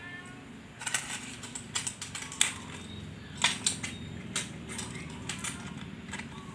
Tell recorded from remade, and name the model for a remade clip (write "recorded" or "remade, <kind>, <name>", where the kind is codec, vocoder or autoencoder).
recorded